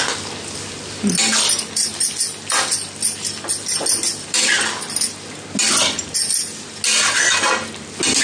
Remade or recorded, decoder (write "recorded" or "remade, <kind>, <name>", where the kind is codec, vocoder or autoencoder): recorded